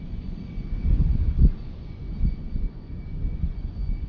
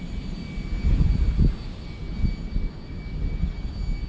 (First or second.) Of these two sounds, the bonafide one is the second